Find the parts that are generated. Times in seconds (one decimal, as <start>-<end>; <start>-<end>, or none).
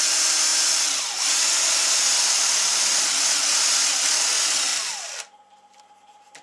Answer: none